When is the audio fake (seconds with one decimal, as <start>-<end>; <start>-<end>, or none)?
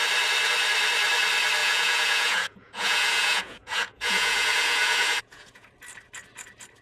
1.6-5.7